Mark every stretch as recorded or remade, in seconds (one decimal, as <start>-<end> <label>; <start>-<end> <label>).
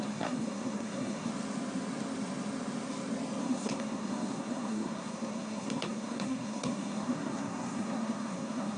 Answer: 0.0-1.3 remade; 1.3-3.4 recorded; 3.4-8.8 remade